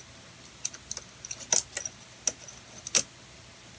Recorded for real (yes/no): yes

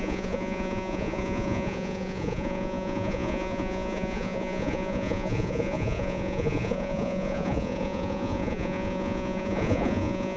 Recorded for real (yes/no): no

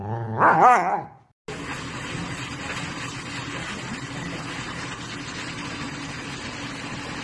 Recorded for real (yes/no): yes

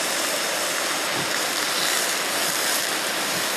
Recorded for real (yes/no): yes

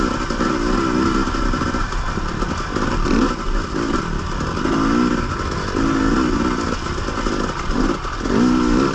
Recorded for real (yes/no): yes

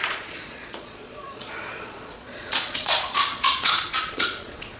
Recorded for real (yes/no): no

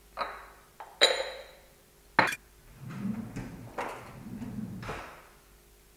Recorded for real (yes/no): yes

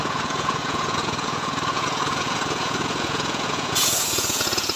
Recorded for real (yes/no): no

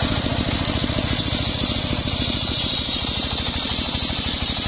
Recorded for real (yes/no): yes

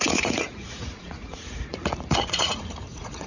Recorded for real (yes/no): no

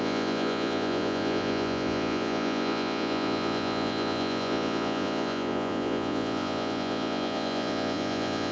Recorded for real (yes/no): no